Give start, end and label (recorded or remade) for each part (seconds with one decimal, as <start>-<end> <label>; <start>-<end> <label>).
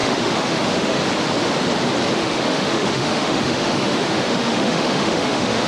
0.0-1.0 remade; 1.0-2.2 recorded; 2.2-5.7 remade